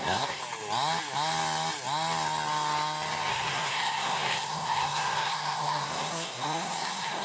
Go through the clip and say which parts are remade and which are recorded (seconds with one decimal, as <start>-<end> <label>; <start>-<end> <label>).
0.0-0.4 remade; 0.4-3.3 recorded; 3.3-7.2 remade